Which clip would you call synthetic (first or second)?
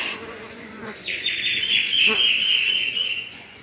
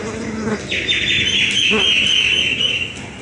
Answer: first